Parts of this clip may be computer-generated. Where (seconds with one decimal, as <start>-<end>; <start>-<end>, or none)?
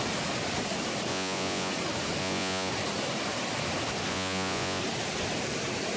1.1-1.7; 2.2-2.7; 4.1-4.8